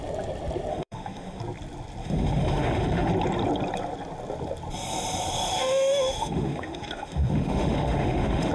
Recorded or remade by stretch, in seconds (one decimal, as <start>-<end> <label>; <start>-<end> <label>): 0.0-0.7 recorded; 0.7-1.4 remade; 1.4-2.0 recorded; 2.0-3.1 remade; 3.1-5.5 recorded; 5.5-8.5 remade